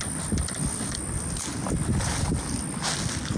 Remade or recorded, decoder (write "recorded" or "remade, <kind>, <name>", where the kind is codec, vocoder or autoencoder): recorded